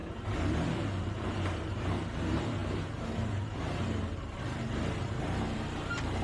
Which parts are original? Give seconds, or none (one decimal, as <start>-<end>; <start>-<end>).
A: 0.0-1.0